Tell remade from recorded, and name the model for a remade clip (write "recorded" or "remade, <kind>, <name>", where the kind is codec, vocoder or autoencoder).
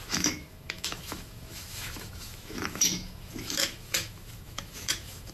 remade, autoencoder, DAC-VAE